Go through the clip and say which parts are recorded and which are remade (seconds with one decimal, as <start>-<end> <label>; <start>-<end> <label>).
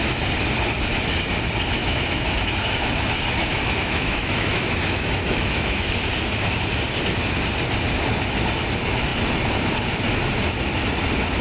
0.0-1.8 recorded; 1.8-5.9 remade; 5.9-11.4 recorded